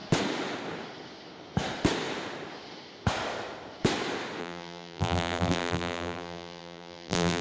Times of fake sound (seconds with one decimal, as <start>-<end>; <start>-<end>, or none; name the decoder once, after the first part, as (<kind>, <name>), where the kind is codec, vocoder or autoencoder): 4.4-7.4 (vocoder, BigVGAN v2)